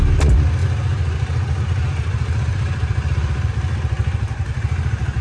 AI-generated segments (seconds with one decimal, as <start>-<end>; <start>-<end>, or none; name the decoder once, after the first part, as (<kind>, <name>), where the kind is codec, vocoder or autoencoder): 0.6-3.5 (vocoder, BigVGAN v2); 4.0-5.2